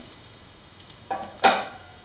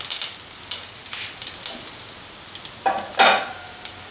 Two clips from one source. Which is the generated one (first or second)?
first